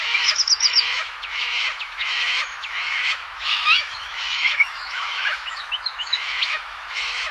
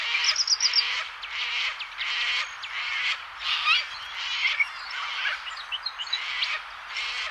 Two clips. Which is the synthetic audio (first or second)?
first